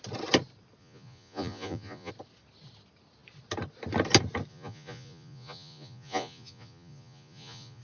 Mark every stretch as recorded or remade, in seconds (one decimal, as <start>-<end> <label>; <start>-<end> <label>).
0.0-0.8 recorded; 0.8-2.1 remade; 2.1-4.5 recorded; 4.5-7.8 remade